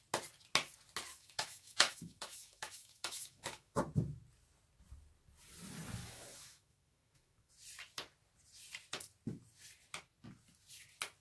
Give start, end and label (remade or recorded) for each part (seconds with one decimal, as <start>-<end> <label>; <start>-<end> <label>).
0.0-1.1 recorded; 1.1-3.8 remade; 3.8-6.0 recorded; 6.0-7.5 remade; 7.5-11.2 recorded